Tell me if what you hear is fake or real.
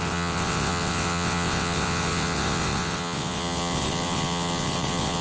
fake